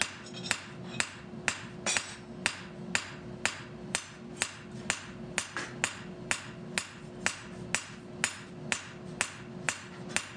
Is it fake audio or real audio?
real